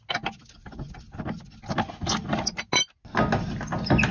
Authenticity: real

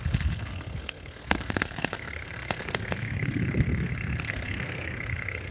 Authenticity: fake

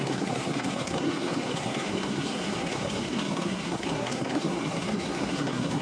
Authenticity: fake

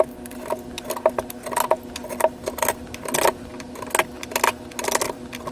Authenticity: real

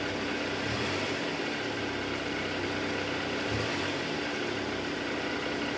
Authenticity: real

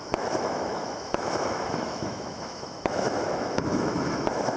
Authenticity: fake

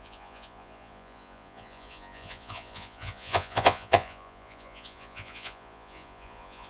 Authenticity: fake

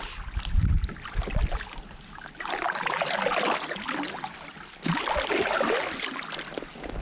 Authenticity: real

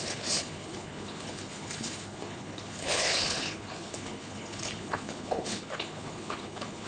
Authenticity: fake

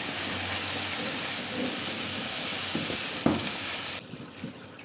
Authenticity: real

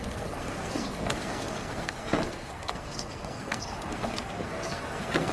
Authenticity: fake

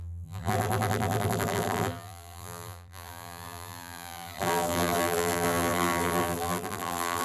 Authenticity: fake